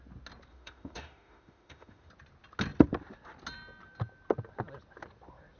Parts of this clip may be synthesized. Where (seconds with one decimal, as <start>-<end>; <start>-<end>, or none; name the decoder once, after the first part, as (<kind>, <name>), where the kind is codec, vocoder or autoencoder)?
0.5-2.1 (autoencoder, DAC-VAE)